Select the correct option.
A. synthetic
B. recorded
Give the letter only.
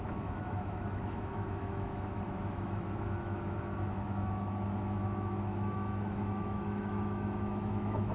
A